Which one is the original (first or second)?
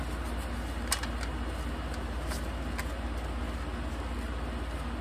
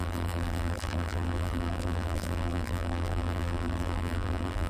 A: first